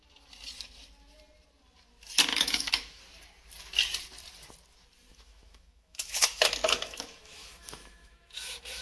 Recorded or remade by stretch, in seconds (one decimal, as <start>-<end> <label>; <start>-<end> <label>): 0.0-2.3 recorded; 2.3-3.0 remade; 3.0-5.1 recorded; 5.1-8.8 remade